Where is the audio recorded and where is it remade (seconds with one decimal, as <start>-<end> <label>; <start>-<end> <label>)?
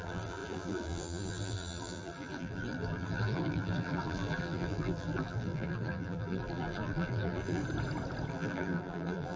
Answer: 0.0-7.6 remade; 7.6-8.3 recorded; 8.3-9.4 remade